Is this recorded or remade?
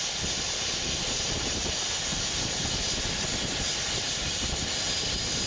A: recorded